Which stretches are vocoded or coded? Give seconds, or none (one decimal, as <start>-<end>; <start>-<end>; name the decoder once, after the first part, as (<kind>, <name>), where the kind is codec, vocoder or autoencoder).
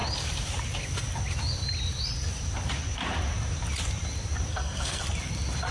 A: 4.5-5.0 (codec, SNAC)